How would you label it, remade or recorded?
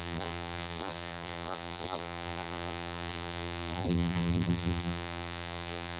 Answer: remade